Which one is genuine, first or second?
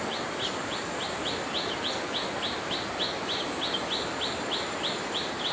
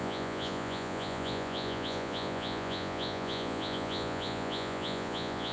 first